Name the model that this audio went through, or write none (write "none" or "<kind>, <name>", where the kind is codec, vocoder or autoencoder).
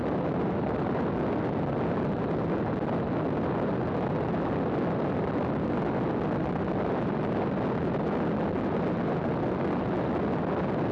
none